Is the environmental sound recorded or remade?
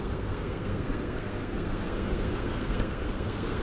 remade